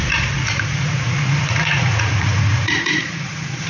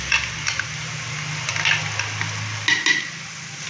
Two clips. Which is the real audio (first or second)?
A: second